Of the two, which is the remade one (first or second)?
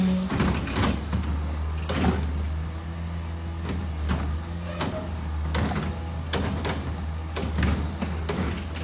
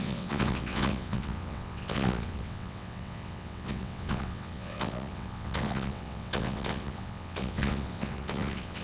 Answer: second